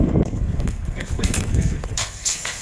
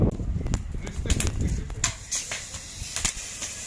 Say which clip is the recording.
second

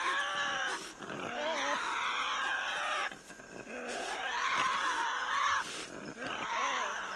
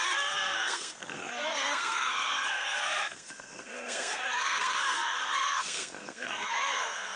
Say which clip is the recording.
first